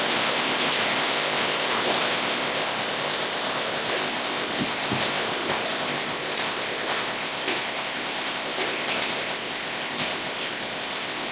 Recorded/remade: remade